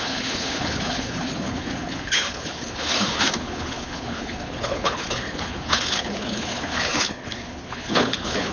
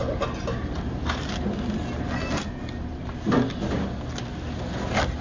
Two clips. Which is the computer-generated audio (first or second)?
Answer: first